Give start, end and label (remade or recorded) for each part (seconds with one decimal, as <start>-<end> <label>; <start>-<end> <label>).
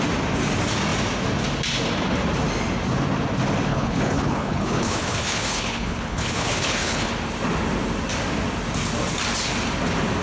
0.0-3.7 recorded; 3.7-7.1 remade; 7.1-10.2 recorded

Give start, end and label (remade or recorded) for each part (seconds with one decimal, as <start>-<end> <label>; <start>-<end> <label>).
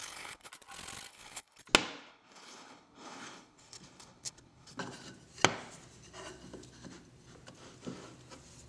0.0-0.5 remade; 0.5-1.1 recorded; 1.1-1.6 remade; 1.6-2.1 recorded; 2.1-4.8 remade; 4.8-8.7 recorded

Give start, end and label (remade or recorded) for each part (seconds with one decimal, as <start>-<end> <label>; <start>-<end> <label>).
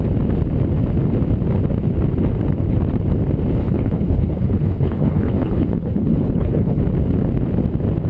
0.0-3.6 recorded; 3.6-6.8 remade; 6.8-8.1 recorded